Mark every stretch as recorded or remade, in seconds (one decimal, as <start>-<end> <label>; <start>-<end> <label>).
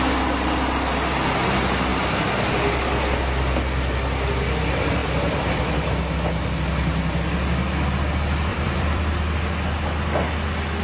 0.0-5.0 recorded; 5.0-5.6 remade; 5.6-8.5 recorded; 8.5-9.1 remade; 9.1-10.8 recorded